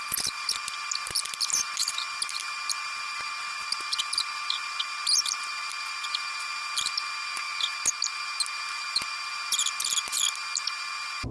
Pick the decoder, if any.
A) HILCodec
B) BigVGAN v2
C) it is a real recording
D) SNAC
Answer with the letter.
C